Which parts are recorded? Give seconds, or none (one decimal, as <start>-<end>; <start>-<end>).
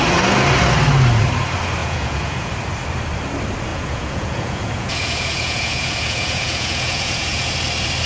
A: 0.0-1.8; 2.5-3.7; 7.5-8.1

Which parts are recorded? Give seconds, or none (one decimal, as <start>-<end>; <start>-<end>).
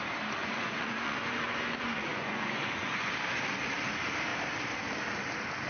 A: 0.0-0.4; 3.1-5.7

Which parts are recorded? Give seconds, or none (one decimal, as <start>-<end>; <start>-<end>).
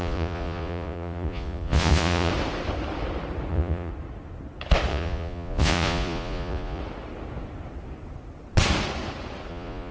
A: 2.3-3.5; 3.9-4.9; 6.8-9.5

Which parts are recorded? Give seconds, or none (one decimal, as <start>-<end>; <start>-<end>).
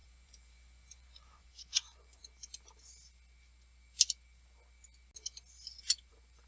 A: 2.2-6.1